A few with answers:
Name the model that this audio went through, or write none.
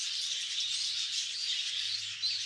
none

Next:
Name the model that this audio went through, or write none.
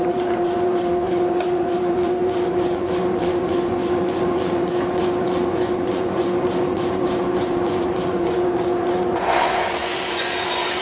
vocoder, Vocos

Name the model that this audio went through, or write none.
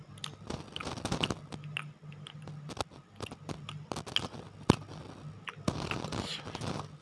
none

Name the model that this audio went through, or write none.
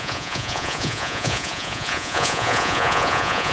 vocoder, Vocos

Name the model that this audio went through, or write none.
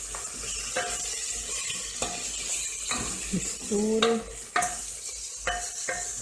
none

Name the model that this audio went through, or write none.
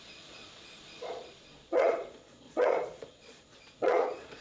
vocoder, Vocos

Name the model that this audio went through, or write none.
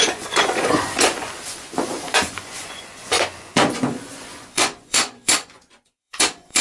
vocoder, Vocos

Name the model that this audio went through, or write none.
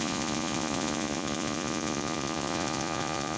vocoder, Vocos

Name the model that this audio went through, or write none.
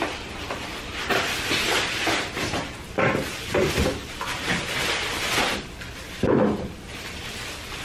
none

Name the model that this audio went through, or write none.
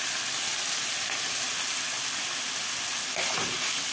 none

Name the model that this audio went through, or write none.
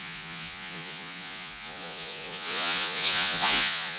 vocoder, Vocos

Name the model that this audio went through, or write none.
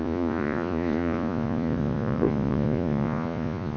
vocoder, Vocos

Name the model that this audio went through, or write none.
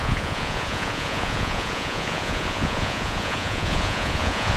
vocoder, Vocos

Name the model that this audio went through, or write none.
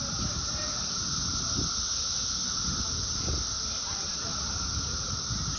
none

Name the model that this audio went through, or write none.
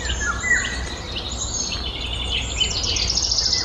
none